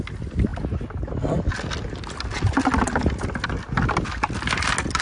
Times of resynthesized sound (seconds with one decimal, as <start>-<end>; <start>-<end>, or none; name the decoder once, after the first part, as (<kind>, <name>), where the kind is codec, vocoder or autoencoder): none